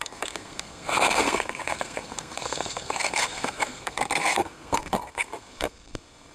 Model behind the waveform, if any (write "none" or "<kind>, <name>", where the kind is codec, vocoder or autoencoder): codec, SNAC